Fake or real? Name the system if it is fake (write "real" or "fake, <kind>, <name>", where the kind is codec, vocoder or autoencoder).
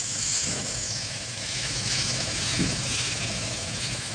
fake, autoencoder, DAC-VAE